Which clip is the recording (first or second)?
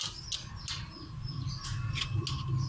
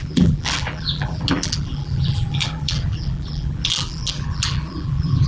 first